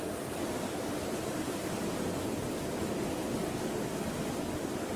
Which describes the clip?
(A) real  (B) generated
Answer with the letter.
A